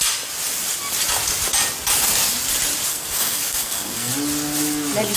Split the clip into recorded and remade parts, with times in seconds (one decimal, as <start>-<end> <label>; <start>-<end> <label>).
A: 0.0-2.9 recorded; 2.9-4.1 remade; 4.1-5.2 recorded